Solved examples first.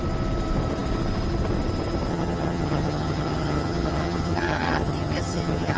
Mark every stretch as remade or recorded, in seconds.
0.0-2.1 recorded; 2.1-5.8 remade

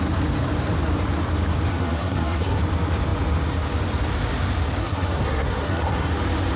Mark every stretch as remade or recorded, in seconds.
0.0-1.7 recorded; 1.7-2.6 remade; 2.6-4.8 recorded; 4.8-6.1 remade; 6.1-6.6 recorded

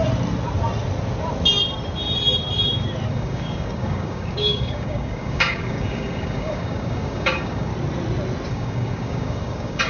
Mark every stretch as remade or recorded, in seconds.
0.0-3.1 recorded; 3.1-7.7 remade; 7.7-8.5 recorded; 8.5-9.9 remade

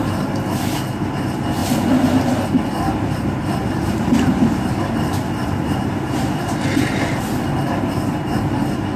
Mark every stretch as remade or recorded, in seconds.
0.0-9.0 recorded

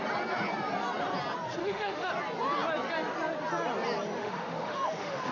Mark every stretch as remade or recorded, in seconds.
0.0-1.6 recorded; 1.6-2.1 remade; 2.1-4.2 recorded; 4.2-5.3 remade

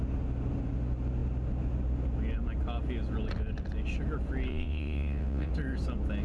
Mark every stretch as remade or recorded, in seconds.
0.0-4.5 recorded; 4.5-5.5 remade; 5.5-6.2 recorded

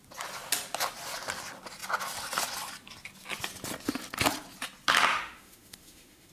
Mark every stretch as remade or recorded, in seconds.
0.0-5.1 recorded; 5.1-6.3 remade